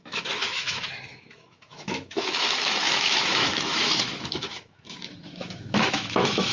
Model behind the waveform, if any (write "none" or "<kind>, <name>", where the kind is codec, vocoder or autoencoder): autoencoder, DAC-VAE